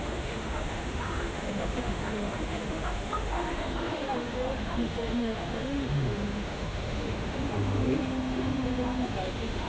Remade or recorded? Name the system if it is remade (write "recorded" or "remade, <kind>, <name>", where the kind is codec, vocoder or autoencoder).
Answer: remade, autoencoder, DAC-VAE